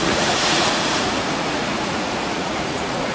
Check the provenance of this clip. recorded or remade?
remade